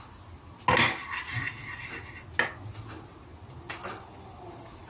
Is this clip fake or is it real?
real